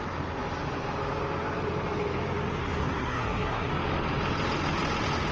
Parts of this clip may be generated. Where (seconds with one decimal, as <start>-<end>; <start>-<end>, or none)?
2.6-3.7